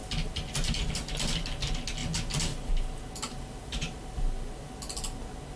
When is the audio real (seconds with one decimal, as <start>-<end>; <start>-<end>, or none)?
0.0-5.6